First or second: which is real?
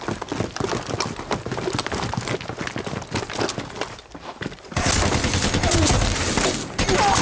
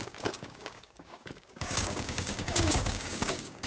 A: first